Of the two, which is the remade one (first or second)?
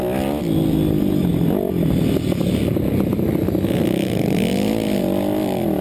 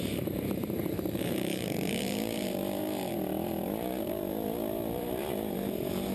second